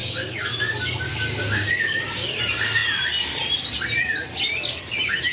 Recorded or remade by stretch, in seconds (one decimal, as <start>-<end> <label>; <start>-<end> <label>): 0.0-0.5 remade; 0.5-1.1 recorded; 1.1-2.4 remade; 2.4-5.3 recorded